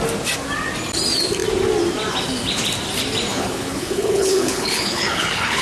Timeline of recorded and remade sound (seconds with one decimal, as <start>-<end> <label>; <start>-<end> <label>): 0.0-3.3 recorded; 3.3-5.6 remade